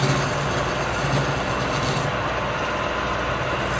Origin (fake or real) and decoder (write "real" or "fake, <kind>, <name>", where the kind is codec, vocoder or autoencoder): real